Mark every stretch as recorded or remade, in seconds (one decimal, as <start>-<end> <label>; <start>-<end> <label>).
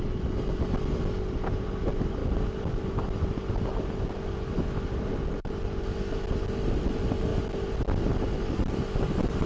0.0-9.5 recorded